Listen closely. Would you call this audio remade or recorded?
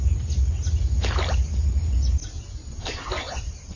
recorded